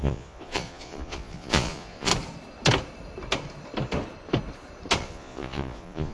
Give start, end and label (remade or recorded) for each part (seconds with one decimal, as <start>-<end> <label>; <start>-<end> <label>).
0.0-2.1 remade; 2.1-5.0 recorded; 5.0-6.1 remade